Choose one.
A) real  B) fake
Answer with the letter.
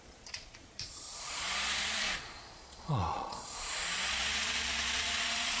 B